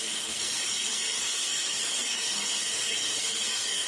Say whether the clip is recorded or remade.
remade